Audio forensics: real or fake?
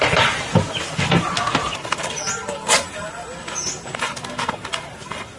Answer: real